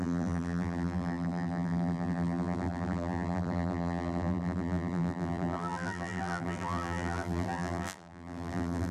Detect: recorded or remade remade